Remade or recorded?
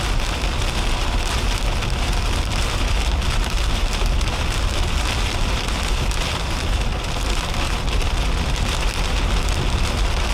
recorded